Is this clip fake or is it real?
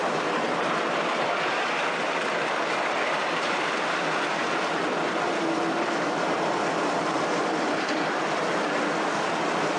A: fake